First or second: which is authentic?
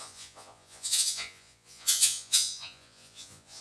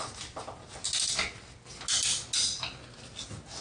second